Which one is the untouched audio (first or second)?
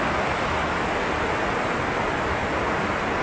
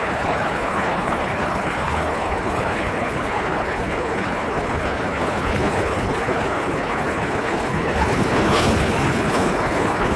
first